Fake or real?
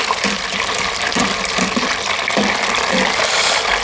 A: real